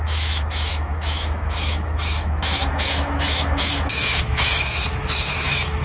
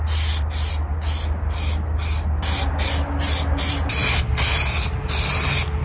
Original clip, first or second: second